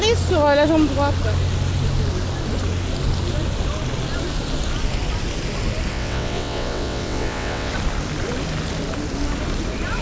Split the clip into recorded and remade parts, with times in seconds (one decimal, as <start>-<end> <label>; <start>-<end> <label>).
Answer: 0.0-5.9 recorded; 5.9-7.7 remade; 7.7-10.0 recorded